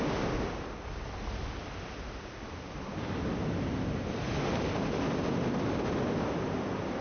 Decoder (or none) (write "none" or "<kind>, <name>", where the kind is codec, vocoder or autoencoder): none